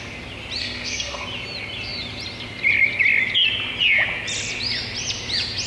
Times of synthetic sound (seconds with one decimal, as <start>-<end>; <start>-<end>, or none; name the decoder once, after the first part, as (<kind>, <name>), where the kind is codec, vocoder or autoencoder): 0.6-1.2 (codec, SNAC)